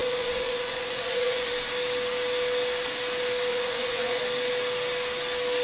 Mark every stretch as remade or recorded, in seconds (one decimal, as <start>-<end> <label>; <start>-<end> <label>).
0.0-1.5 remade; 1.5-3.5 recorded; 3.5-4.2 remade; 4.2-5.6 recorded